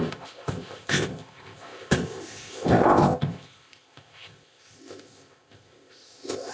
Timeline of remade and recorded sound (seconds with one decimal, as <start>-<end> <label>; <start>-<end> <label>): 0.0-6.5 remade